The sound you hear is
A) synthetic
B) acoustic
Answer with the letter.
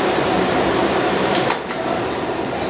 A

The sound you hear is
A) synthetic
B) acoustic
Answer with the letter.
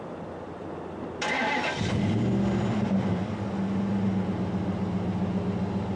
B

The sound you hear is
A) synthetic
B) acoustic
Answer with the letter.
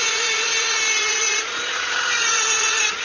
B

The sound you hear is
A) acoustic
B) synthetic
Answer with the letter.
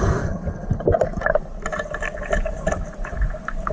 A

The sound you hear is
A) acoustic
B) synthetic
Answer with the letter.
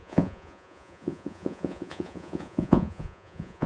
B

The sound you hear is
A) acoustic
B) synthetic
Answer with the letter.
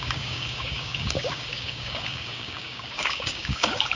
B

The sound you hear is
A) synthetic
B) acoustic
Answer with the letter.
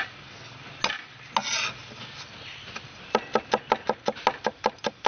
B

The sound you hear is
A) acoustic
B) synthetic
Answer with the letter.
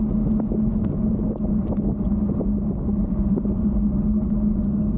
A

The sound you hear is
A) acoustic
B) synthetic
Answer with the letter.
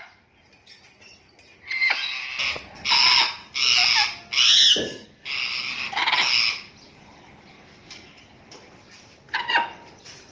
A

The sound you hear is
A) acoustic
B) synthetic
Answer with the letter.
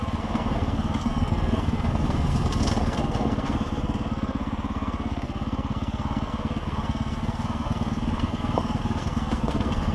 B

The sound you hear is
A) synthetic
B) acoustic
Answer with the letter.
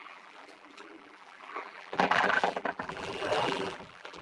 A